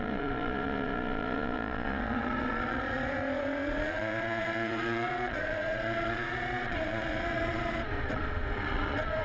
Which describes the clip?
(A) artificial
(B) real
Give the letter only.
A